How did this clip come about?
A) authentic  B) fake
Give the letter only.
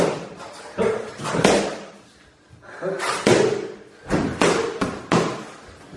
A